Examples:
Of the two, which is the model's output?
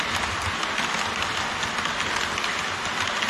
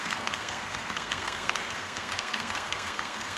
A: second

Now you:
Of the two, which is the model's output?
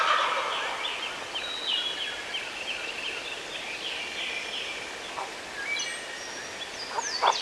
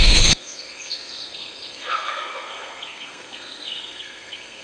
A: second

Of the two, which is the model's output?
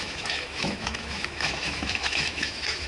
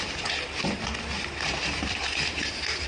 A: first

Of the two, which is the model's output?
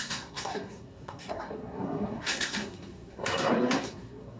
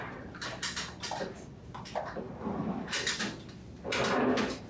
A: first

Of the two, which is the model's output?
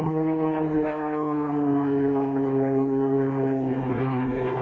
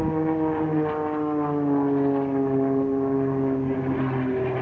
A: first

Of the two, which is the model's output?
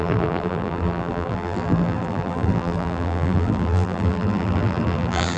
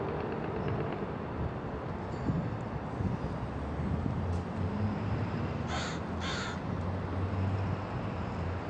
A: first